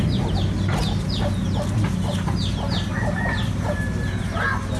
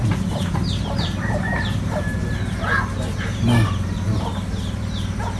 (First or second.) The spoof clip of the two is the second